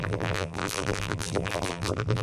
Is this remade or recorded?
remade